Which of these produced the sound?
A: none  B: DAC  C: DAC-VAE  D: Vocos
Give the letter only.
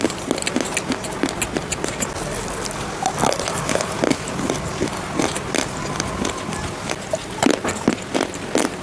A